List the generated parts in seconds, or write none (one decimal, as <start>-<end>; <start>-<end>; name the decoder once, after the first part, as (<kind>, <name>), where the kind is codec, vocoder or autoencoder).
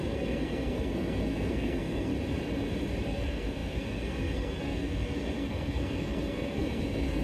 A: 0.0-2.1 (codec, SNAC); 3.1-7.2